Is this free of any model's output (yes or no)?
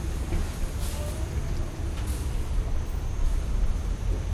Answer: yes